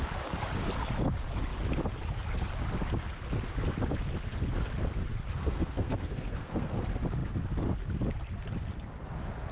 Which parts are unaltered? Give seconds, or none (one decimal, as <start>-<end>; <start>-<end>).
0.0-5.4; 6.8-9.5